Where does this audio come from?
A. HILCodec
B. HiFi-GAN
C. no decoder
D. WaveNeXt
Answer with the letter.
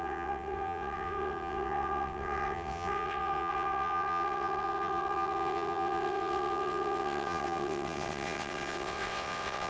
D